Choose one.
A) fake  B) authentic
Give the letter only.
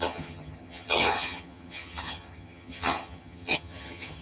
A